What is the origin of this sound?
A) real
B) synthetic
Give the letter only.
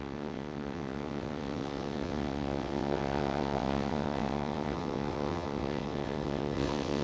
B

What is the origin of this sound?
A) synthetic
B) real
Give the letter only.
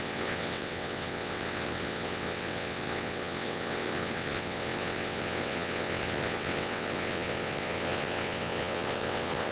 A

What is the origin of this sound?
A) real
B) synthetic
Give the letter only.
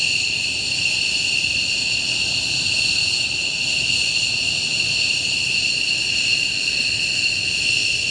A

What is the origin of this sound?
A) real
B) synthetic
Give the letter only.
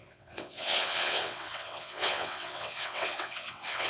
B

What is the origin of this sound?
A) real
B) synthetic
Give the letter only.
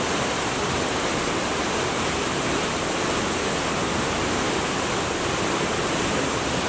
A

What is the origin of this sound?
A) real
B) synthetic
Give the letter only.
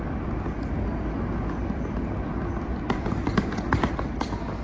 A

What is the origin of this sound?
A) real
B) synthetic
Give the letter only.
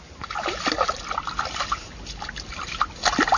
A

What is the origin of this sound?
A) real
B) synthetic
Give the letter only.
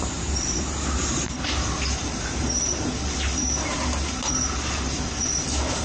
A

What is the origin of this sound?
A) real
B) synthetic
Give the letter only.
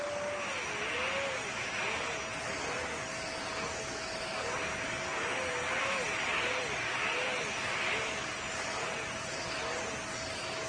A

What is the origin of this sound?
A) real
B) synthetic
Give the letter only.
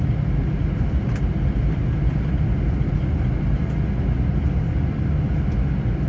A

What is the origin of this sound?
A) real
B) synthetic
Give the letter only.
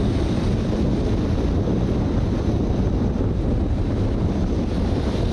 A